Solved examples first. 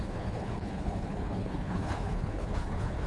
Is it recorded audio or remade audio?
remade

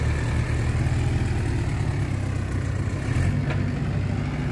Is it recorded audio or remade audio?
recorded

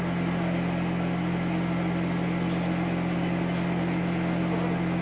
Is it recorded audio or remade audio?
recorded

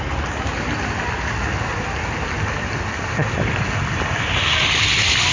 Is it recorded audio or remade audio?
recorded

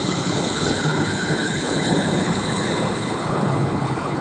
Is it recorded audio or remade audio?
remade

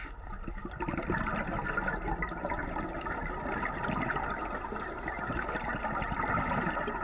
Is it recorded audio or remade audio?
recorded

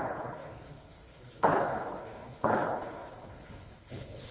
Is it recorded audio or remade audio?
remade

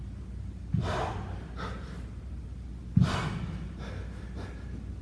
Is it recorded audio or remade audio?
recorded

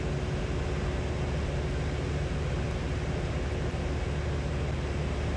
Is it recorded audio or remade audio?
recorded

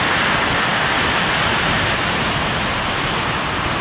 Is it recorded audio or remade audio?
recorded